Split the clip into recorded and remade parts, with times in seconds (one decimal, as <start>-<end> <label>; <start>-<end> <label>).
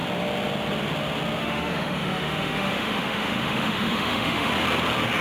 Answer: 0.0-1.4 recorded; 1.4-4.5 remade; 4.5-5.2 recorded